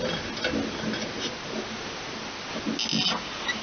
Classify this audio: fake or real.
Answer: real